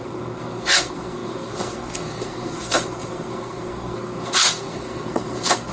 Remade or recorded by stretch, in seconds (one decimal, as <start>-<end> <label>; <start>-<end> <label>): 0.0-5.7 remade